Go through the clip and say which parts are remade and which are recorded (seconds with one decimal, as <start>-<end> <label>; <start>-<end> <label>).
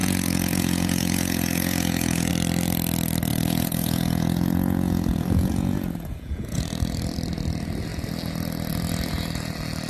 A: 0.0-2.3 remade; 2.3-3.3 recorded; 3.3-6.6 remade; 6.6-9.9 recorded